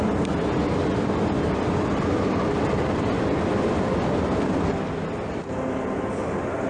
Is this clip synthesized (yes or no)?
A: no